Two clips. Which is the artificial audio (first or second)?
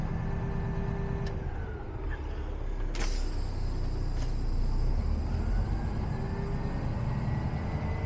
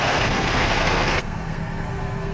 second